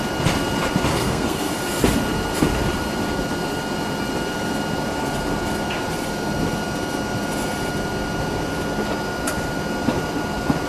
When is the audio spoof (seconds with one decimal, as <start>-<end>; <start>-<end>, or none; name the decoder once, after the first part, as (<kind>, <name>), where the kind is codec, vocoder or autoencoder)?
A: 0.9-1.5 (codec, SNAC)